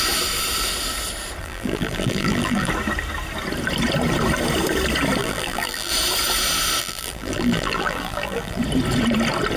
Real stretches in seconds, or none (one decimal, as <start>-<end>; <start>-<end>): 0.0-1.4; 2.7-5.2; 5.9-6.8; 8.6-9.6

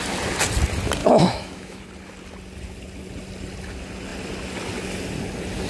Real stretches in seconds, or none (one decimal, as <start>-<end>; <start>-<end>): 0.0-1.0; 1.8-5.7

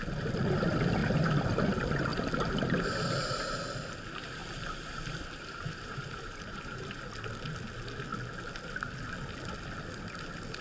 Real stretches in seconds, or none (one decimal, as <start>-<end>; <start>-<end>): 0.0-1.0; 1.6-4.4; 7.0-10.6

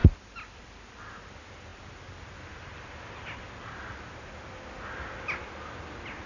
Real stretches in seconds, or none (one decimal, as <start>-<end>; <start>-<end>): 0.0-6.3

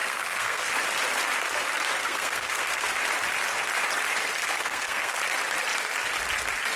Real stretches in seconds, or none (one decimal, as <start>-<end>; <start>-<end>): 0.7-2.0; 2.9-4.4; 5.2-6.8

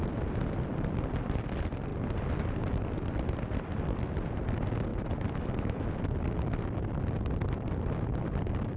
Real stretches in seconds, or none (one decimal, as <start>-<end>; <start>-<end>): 0.0-4.9; 5.9-8.8

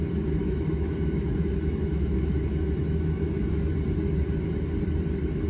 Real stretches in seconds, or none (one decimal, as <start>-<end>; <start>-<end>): 0.0-0.4; 3.7-5.5

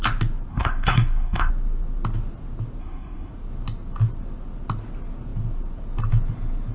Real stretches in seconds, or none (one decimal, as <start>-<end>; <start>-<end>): 0.0-0.5; 1.5-2.8; 3.3-6.7